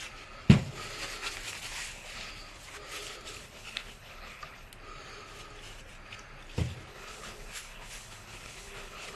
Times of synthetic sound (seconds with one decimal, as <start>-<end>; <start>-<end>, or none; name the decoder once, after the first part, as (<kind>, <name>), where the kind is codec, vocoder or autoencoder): 1.8-2.3 (codec, HILCodec); 3.4-4.7; 6.9-9.2